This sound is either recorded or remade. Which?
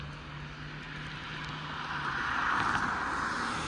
recorded